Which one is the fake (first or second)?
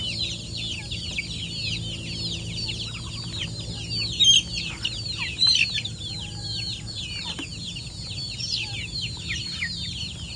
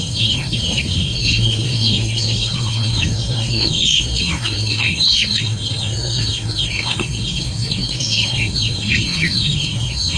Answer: second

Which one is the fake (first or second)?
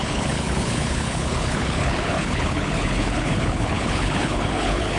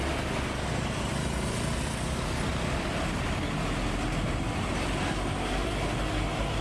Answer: first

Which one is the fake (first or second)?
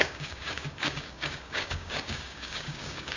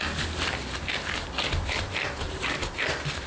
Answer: first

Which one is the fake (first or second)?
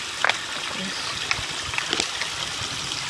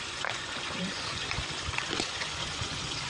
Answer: second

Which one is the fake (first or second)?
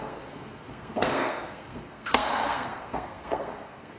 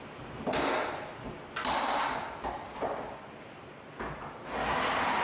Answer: first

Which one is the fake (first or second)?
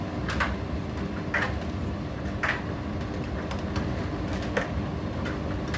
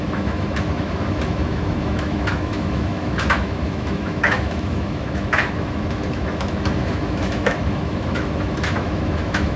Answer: second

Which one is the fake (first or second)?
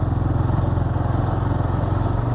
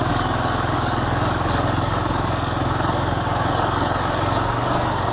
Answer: second